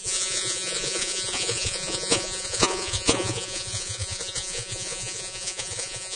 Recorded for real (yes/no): no